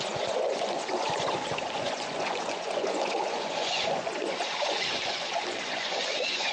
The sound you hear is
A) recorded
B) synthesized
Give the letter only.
B